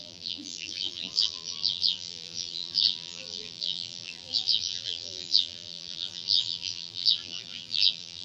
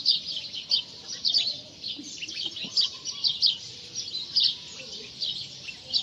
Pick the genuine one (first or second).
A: second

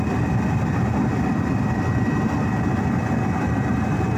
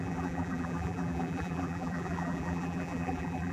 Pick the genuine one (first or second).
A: first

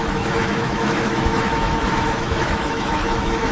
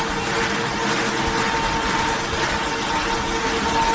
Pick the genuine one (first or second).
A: second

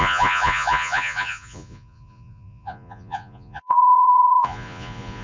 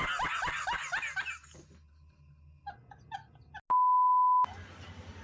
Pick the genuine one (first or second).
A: second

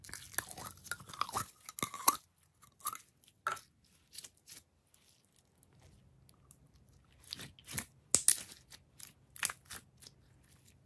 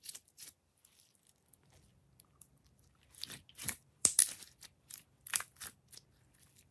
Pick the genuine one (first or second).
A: first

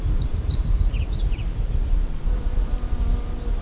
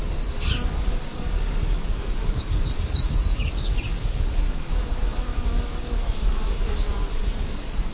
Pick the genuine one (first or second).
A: first